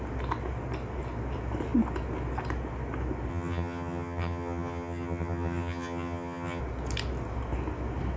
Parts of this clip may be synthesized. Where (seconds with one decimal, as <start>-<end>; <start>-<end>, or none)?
3.3-6.6